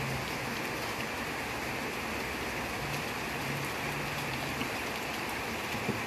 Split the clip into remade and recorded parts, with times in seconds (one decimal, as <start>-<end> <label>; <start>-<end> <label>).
0.0-4.6 recorded; 4.6-6.1 remade